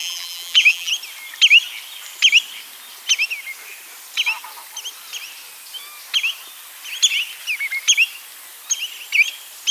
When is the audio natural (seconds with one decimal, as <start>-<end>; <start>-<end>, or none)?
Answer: 0.9-9.7